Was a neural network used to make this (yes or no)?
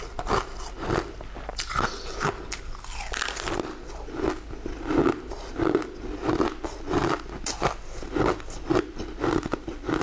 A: no